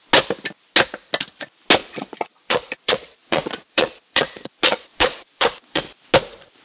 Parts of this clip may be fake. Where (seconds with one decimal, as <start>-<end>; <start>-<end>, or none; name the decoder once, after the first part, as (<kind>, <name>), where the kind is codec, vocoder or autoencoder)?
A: 1.8-5.8 (vocoder, Vocos)